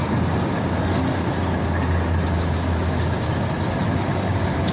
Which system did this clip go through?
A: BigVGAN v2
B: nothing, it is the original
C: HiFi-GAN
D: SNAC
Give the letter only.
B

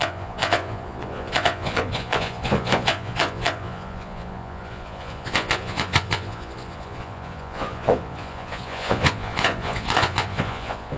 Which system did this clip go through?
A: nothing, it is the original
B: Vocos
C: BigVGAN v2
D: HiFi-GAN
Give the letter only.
B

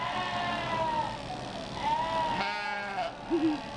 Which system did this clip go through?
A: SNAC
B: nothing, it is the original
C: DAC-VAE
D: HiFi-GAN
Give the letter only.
B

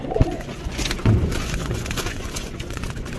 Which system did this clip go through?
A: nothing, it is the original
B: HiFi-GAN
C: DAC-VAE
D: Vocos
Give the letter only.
D